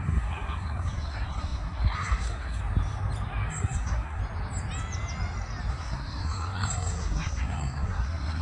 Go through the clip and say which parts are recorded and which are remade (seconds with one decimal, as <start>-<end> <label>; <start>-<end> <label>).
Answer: 0.0-2.6 remade; 2.6-3.5 recorded; 3.5-4.2 remade; 4.2-5.7 recorded; 5.7-8.4 remade